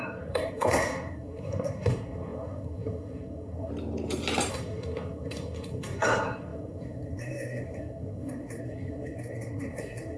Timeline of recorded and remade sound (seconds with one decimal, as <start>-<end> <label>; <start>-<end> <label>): 0.0-3.7 remade; 3.7-4.5 recorded; 4.5-10.2 remade